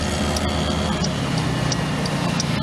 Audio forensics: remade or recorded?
recorded